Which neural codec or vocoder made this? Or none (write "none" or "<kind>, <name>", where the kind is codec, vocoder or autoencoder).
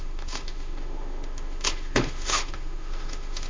autoencoder, DAC-VAE